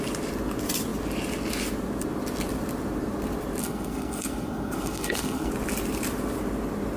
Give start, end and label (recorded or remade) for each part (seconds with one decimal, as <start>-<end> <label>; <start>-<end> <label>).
0.0-3.6 recorded; 3.6-5.5 remade; 5.5-7.0 recorded

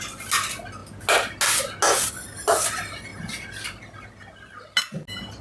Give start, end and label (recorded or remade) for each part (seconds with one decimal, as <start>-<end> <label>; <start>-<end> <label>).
0.0-5.4 recorded

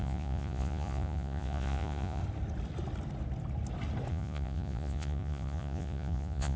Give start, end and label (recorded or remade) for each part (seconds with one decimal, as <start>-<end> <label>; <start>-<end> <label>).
0.0-2.2 remade; 2.2-4.1 recorded; 4.1-6.6 remade